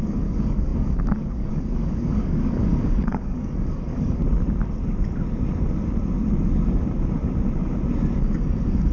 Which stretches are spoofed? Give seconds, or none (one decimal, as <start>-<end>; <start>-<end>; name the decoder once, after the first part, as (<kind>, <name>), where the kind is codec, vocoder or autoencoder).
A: 0.0-4.2 (codec, DAC); 8.2-8.9